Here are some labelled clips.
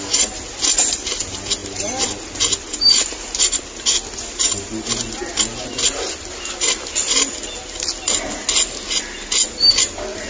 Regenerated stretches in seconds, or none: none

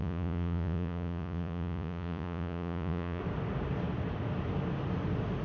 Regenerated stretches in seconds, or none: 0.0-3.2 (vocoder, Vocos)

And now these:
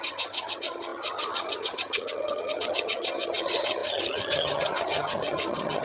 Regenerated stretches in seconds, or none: 0.0-5.8 (vocoder, HiFi-GAN)